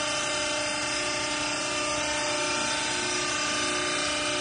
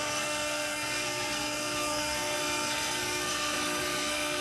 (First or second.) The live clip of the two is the first